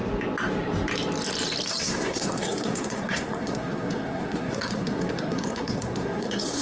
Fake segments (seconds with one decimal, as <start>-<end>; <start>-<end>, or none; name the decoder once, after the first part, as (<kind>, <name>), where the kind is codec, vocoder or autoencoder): 1.8-6.6 (codec, SNAC)